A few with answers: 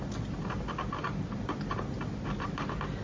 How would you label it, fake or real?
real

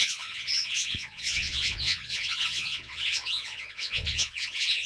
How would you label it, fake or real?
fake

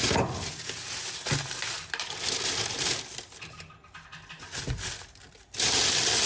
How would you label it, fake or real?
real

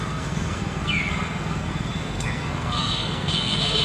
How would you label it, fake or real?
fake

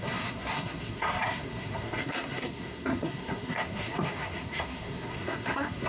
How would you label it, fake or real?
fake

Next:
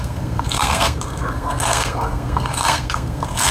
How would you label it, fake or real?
fake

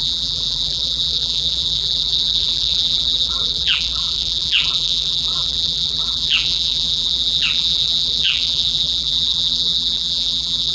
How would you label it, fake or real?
fake